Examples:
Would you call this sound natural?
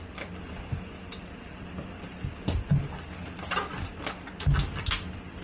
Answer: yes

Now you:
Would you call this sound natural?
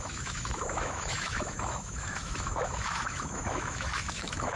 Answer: no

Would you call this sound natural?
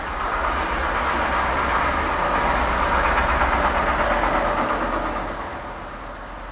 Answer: yes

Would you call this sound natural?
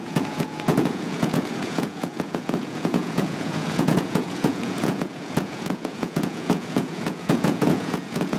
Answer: no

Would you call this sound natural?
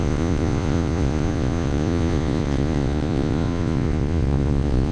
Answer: no